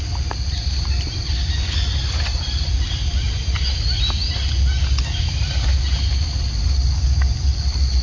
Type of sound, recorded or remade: recorded